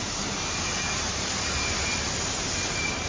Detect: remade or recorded recorded